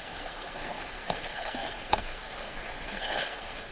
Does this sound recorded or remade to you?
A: remade